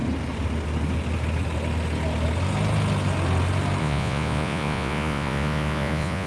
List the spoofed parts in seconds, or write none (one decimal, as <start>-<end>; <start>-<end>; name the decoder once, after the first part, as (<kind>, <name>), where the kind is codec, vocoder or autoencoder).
3.8-6.3 (vocoder, Vocos)